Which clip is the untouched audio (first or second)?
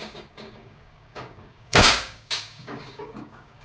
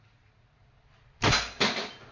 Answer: second